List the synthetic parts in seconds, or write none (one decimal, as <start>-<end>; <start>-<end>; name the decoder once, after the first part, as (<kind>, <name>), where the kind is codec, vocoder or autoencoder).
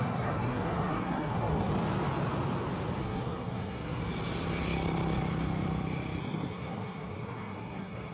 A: 0.0-1.7 (codec, SNAC); 3.0-4.0; 6.2-8.1